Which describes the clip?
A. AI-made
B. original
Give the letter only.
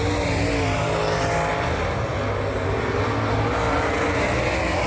B